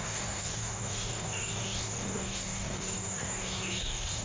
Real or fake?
fake